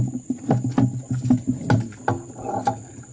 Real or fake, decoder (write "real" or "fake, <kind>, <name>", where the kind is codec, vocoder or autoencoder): real